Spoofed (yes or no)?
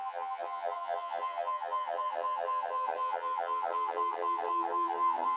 yes